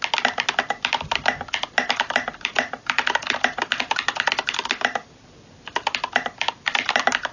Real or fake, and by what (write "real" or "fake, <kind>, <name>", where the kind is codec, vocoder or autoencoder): real